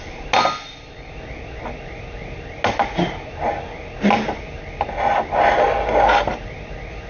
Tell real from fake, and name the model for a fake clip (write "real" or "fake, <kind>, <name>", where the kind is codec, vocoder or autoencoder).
real